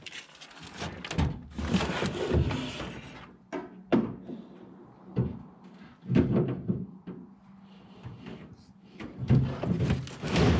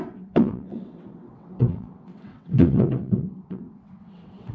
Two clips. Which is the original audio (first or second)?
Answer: first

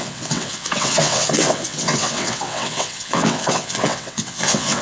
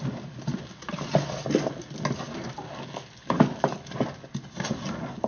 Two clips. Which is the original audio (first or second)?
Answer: second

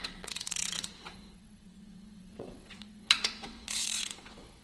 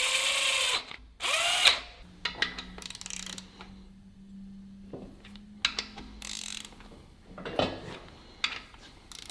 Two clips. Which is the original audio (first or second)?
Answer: second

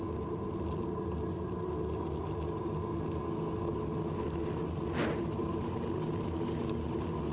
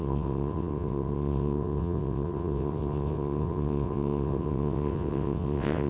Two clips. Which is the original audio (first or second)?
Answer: first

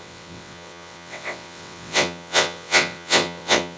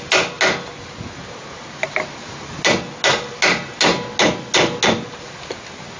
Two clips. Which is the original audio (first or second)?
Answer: second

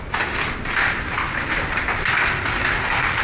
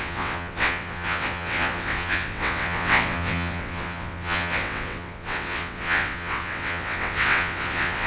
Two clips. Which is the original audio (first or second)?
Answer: first